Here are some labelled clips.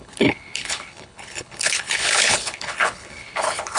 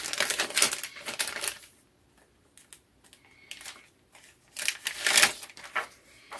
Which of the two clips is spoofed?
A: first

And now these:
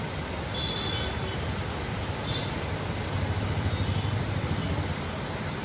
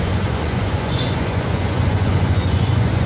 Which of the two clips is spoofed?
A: second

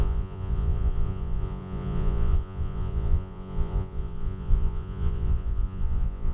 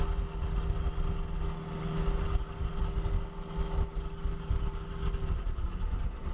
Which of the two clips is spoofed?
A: first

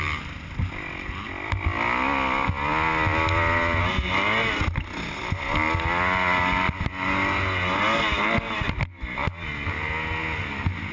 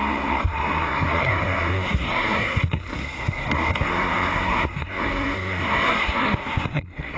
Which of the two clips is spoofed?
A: second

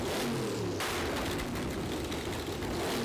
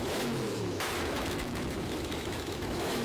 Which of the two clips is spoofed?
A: second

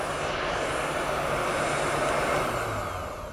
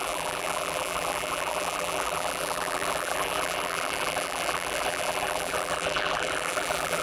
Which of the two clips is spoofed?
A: second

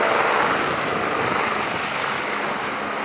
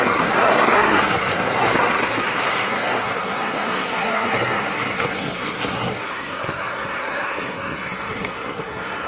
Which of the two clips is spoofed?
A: second